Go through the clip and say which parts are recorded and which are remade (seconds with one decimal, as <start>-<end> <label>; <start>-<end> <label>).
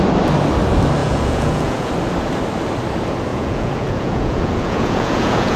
0.0-1.0 recorded; 1.0-1.9 remade; 1.9-3.3 recorded; 3.3-5.6 remade